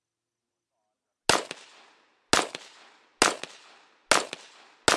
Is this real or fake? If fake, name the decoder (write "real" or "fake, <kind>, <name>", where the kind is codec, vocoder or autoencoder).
real